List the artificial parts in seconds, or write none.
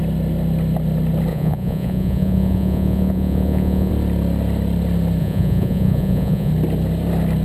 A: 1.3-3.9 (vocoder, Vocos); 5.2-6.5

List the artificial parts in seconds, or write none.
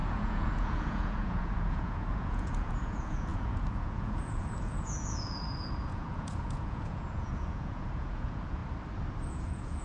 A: 0.0-8.6 (vocoder, Vocos); 9.3-9.8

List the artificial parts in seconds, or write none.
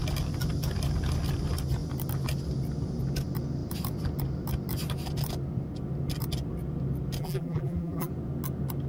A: 7.2-8.1 (vocoder, BigVGAN v2)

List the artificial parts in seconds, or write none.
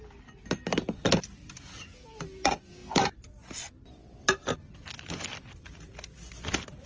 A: none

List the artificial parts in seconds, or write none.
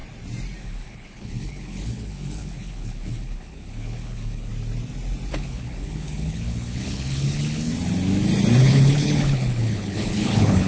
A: 0.6-4.5 (codec, HILCodec); 5.3-7.7; 8.6-10.7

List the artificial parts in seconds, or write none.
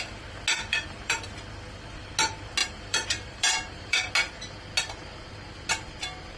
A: 0.7-1.2 (vocoder, BigVGAN v2); 2.6-4.1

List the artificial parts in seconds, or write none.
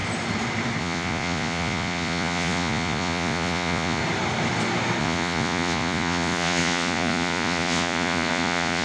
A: 0.8-4.0 (vocoder, Vocos); 5.0-8.8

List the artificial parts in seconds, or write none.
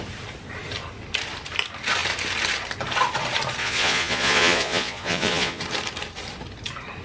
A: 3.6-5.6 (vocoder, Vocos)